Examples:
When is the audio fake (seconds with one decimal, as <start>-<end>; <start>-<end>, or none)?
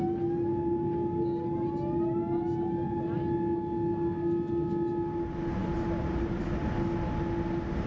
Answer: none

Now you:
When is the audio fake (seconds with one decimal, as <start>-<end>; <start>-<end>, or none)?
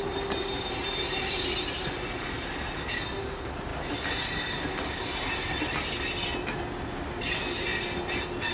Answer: none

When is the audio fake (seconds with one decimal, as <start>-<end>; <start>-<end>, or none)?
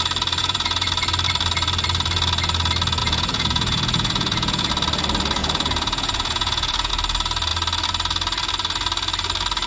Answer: 0.4-0.9; 3.0-4.7; 5.4-6.9